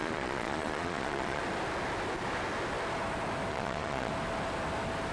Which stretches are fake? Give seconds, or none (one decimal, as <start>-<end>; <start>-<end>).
0.0-1.4; 3.5-4.1